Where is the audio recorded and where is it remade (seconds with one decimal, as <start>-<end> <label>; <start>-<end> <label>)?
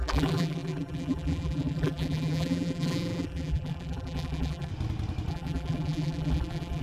0.0-4.7 remade; 4.7-5.3 recorded; 5.3-6.8 remade